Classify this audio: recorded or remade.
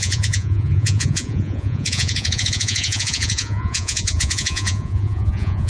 remade